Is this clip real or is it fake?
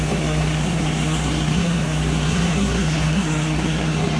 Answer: fake